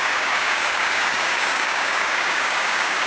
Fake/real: fake